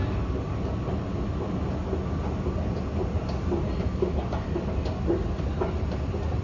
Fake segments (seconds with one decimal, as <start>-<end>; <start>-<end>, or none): none